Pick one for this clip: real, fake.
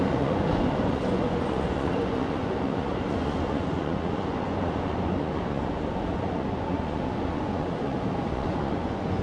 fake